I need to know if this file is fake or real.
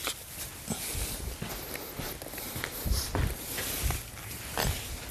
real